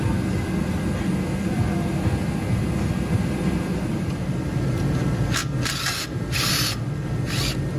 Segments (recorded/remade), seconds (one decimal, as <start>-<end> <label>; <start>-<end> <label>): 0.0-7.8 recorded